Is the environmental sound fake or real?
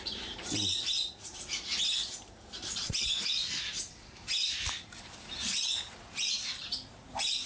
fake